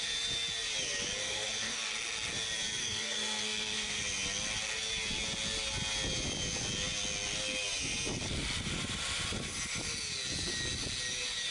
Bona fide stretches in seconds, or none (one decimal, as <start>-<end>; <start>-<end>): 0.0-1.2; 1.9-2.8; 4.0-11.5